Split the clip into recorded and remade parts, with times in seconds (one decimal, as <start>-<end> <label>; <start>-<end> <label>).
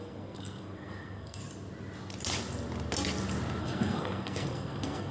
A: 0.0-1.4 remade; 1.4-3.6 recorded; 3.6-5.1 remade